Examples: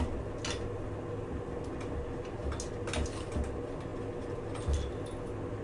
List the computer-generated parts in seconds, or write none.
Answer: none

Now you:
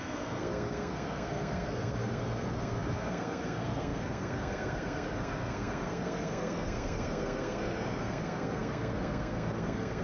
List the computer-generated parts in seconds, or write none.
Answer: 0.0-10.0

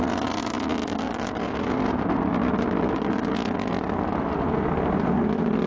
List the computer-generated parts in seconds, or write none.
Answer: none

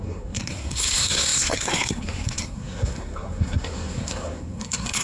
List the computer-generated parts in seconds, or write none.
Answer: 0.0-5.0

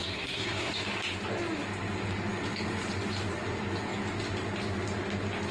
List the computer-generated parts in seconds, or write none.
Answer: 0.0-0.7

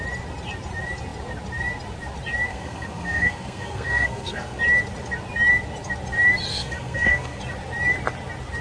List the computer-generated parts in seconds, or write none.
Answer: 2.5-4.6; 6.5-7.4

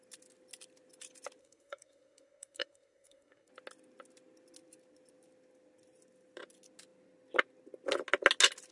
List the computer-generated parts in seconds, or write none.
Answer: 1.4-3.5